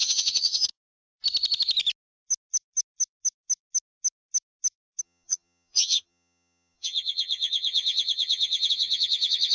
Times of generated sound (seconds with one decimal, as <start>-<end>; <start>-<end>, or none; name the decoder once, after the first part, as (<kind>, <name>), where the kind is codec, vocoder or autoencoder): 0.0-0.7 (vocoder, HiFi-GAN); 5.0-9.5